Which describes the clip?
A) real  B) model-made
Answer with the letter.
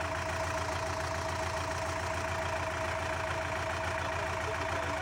A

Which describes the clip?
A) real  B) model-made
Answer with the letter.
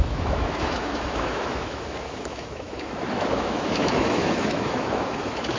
B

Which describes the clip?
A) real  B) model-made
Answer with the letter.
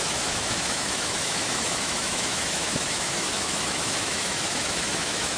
B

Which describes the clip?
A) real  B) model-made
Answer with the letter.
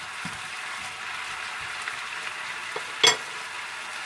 A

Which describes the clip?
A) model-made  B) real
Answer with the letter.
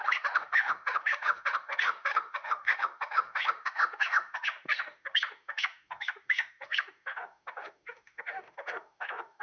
A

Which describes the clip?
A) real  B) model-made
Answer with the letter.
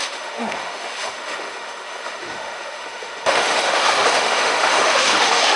B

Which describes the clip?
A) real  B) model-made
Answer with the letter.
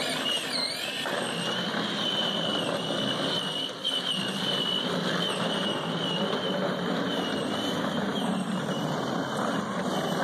A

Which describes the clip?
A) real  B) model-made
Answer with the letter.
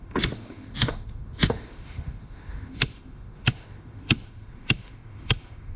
B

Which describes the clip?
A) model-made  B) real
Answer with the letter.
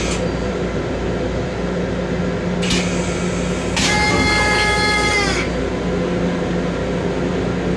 B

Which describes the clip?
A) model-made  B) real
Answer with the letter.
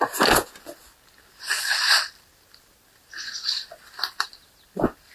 B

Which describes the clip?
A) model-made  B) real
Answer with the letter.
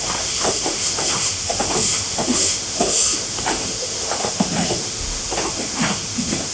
A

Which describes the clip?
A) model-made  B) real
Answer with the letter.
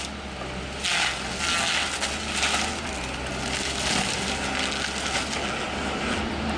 B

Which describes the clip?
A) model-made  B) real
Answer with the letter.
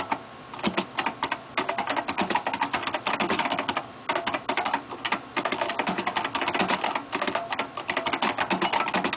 B